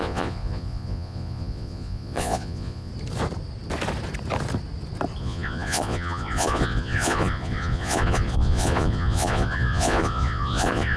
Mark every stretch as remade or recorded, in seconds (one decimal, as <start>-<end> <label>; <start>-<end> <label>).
0.0-2.9 remade; 2.9-5.2 recorded; 5.2-11.0 remade